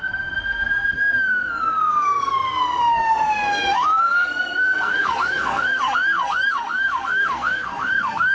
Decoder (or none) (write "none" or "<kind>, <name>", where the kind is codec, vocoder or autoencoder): codec, SNAC